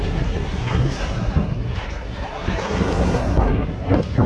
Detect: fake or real fake